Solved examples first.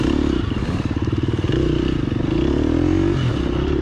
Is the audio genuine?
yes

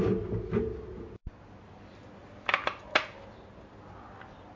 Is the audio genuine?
yes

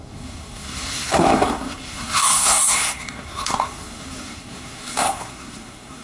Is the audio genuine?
no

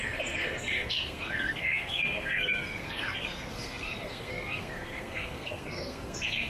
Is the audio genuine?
no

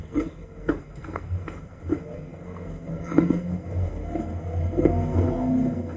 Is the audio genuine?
no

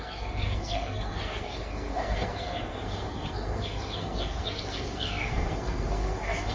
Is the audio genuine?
no